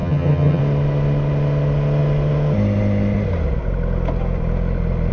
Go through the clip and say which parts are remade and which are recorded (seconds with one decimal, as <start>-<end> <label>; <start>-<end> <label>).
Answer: 0.0-0.6 remade; 0.6-5.1 recorded

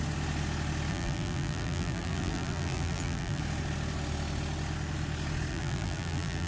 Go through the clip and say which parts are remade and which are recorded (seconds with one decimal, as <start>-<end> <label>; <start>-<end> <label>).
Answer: 0.0-0.9 recorded; 0.9-3.4 remade; 3.4-5.5 recorded; 5.5-6.5 remade

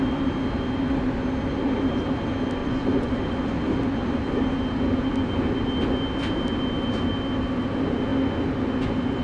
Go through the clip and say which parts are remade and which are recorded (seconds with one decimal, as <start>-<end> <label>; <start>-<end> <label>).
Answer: 0.0-2.6 recorded; 2.6-3.1 remade; 3.1-9.2 recorded